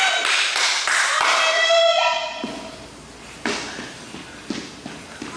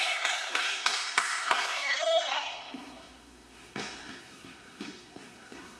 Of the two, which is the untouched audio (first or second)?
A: first